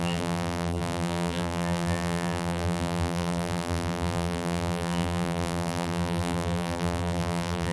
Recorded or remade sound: remade